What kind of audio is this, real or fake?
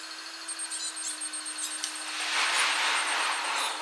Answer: real